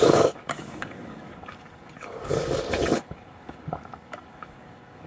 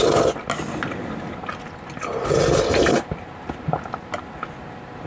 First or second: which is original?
second